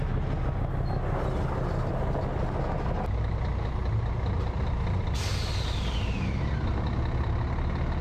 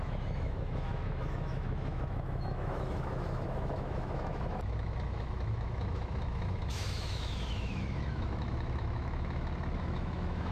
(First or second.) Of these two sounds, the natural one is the first